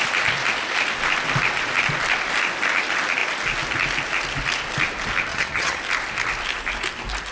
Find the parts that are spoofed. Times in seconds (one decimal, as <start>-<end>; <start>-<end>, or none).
5.3-5.8